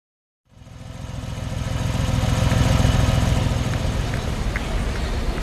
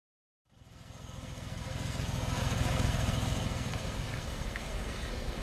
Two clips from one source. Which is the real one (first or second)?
first